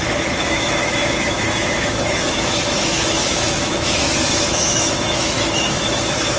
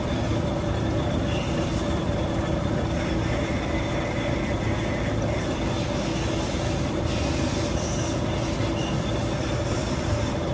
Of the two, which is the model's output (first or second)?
first